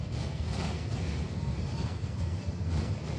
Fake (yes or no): yes